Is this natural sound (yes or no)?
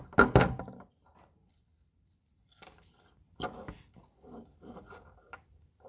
yes